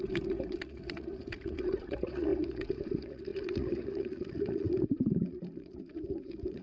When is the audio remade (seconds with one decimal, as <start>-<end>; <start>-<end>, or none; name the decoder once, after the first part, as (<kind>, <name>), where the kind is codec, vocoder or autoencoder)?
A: 0.0-6.6 (vocoder, Vocos)